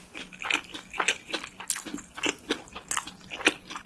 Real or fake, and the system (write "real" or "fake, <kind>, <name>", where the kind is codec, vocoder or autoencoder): real